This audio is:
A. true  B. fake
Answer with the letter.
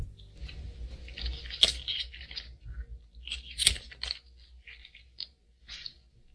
A